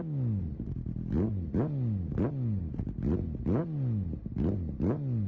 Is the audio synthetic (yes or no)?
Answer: no